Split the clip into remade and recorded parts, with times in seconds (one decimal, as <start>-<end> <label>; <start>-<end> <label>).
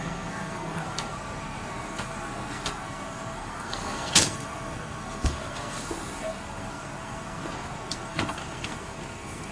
0.0-9.5 remade